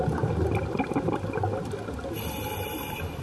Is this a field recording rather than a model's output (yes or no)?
yes